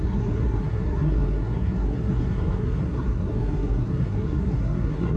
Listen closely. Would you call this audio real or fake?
fake